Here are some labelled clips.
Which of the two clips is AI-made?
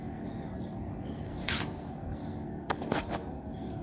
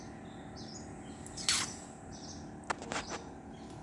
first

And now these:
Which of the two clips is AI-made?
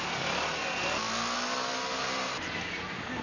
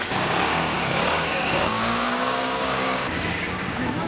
second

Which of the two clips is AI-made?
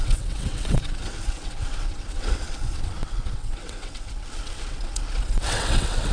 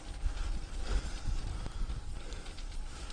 first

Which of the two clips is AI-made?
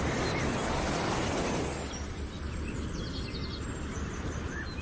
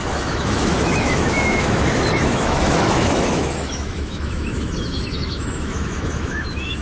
second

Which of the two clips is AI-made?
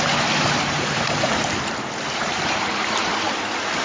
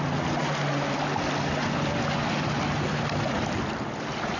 first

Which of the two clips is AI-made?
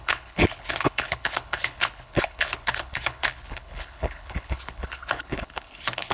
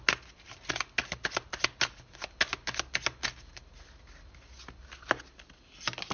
first